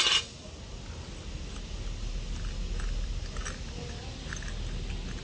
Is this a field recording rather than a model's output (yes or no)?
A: yes